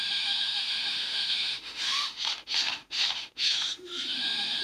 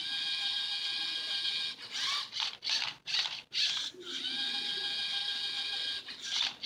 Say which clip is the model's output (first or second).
first